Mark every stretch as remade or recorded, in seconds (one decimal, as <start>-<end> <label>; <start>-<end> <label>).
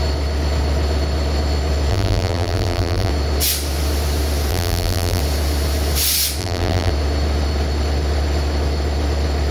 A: 0.0-1.9 recorded; 1.9-3.1 remade; 3.1-4.5 recorded; 4.5-5.2 remade; 5.2-6.4 recorded; 6.4-6.9 remade; 6.9-9.5 recorded